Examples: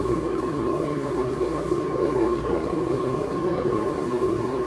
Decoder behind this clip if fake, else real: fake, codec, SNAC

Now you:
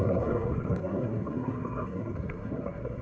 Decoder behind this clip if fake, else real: fake, codec, SNAC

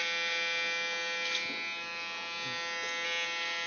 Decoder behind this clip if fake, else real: real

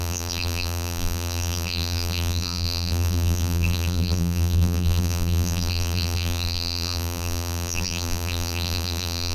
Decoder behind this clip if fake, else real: fake, vocoder, BigVGAN v2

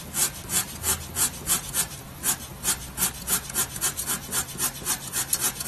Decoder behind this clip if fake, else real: real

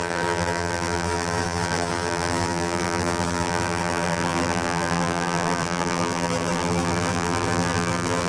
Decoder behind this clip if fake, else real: fake, vocoder, BigVGAN v2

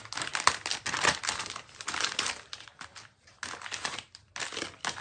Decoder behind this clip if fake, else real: real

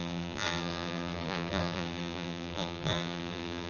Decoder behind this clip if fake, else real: fake, vocoder, BigVGAN v2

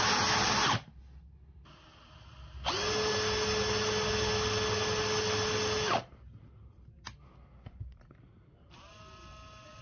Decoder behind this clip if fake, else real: real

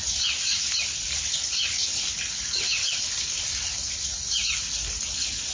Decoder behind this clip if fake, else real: real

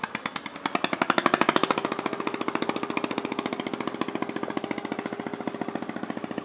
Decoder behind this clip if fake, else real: real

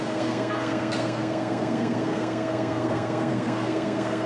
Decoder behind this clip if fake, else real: fake, codec, SNAC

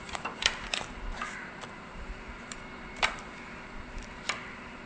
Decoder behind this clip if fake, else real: fake, vocoder, BigVGAN v2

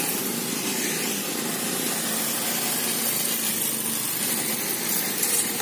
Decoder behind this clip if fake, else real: real